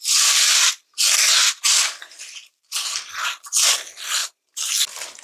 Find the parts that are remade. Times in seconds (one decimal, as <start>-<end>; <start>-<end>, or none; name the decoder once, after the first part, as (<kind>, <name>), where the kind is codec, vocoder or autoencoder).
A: 4.2-4.7 (vocoder, BigVGAN v2)